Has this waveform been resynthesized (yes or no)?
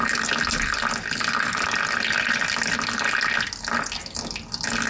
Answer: no